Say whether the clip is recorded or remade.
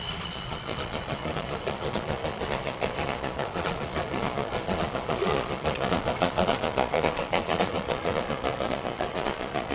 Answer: remade